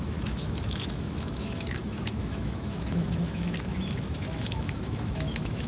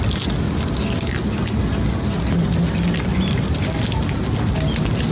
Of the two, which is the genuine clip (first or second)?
second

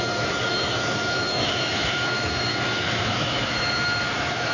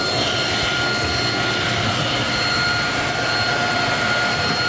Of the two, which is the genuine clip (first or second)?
second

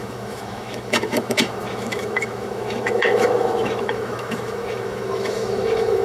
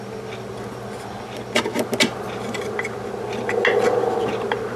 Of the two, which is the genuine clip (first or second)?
second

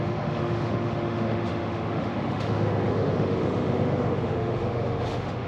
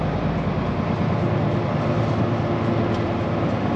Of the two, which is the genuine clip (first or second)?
second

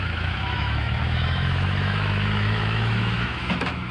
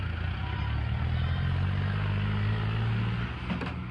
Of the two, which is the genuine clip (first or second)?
second